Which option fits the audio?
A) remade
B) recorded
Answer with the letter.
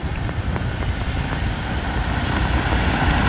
A